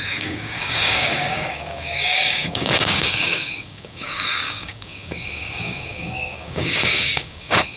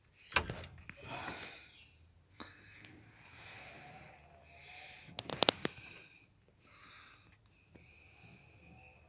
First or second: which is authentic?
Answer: second